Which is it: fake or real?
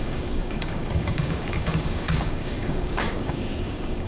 fake